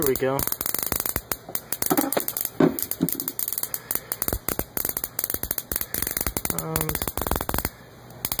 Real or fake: real